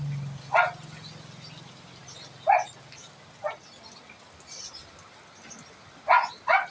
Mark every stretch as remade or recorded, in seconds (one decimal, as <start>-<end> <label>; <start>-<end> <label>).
0.0-6.7 recorded

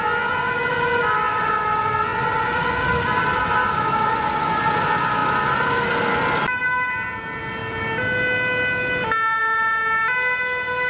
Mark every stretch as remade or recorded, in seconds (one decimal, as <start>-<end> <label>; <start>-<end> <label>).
0.0-10.9 recorded

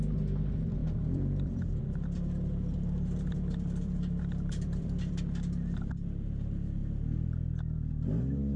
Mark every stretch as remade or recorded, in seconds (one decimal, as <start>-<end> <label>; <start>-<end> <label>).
0.0-0.8 recorded; 0.8-5.2 remade; 5.2-8.6 recorded

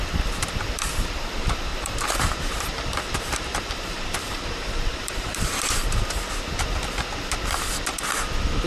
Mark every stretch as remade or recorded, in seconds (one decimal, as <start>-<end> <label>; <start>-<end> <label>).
0.0-1.7 recorded; 1.7-6.3 remade; 6.3-8.7 recorded